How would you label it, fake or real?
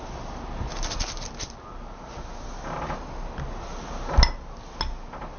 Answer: real